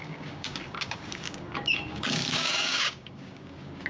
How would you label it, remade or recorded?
remade